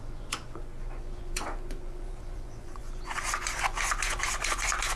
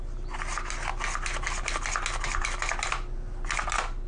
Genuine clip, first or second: second